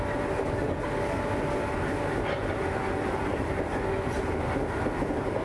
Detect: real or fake real